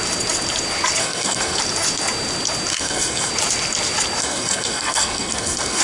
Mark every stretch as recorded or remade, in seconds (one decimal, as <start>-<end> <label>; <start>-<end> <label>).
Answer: 0.0-1.0 recorded; 1.0-1.6 remade; 1.6-2.7 recorded; 2.7-3.3 remade; 3.3-4.2 recorded; 4.2-5.8 remade